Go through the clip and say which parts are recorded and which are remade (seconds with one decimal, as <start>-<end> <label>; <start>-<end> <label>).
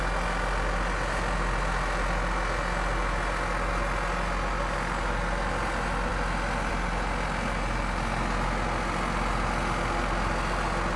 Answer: 0.0-11.0 recorded